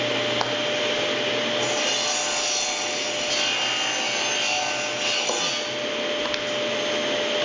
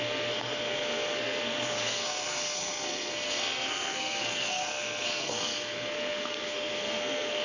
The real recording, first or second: first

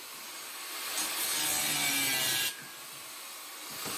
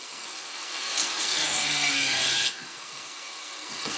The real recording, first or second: first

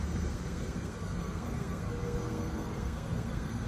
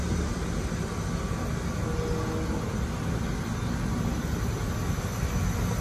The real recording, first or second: second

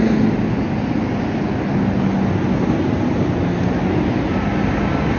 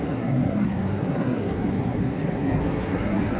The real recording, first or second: first